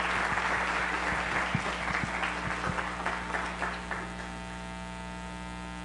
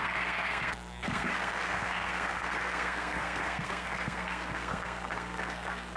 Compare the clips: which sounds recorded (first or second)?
first